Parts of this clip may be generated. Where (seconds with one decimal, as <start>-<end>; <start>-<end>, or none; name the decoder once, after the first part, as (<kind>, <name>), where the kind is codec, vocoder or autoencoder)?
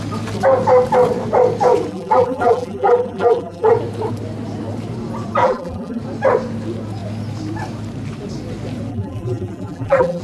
1.9-3.7 (vocoder, BigVGAN v2); 5.4-6.0; 8.9-10.2